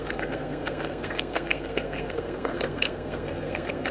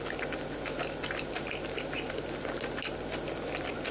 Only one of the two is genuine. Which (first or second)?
second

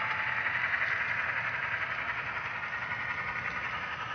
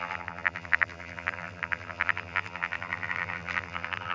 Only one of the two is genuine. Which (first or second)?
first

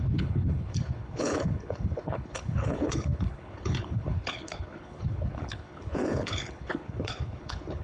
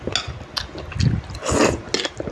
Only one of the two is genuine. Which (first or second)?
second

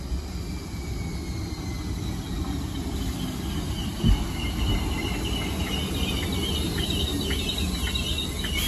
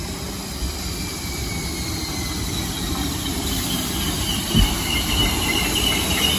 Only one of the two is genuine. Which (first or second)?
first